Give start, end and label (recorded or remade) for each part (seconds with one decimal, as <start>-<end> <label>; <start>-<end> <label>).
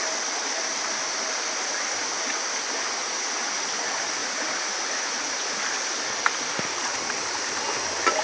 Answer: 0.0-3.0 recorded; 3.0-3.5 remade; 3.5-4.2 recorded; 4.2-5.6 remade; 5.6-8.2 recorded